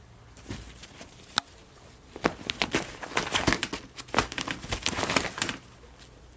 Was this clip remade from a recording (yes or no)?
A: no